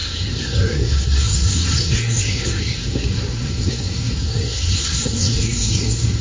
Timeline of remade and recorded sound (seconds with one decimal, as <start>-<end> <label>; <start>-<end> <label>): 0.0-6.2 remade